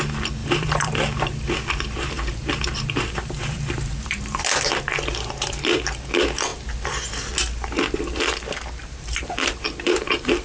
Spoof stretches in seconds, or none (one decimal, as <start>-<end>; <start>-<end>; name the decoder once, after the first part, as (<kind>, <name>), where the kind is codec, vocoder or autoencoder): 0.4-4.4 (vocoder, BigVGAN v2); 8.8-10.4